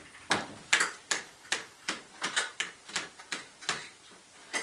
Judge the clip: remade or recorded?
recorded